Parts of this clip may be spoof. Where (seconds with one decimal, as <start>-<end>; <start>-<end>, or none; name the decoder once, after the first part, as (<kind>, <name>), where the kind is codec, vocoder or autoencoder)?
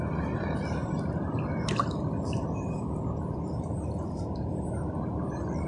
none